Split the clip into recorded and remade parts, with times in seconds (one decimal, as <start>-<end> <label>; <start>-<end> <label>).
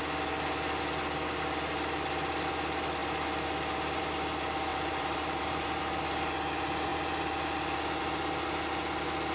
0.0-4.7 recorded; 4.7-5.8 remade; 5.8-9.3 recorded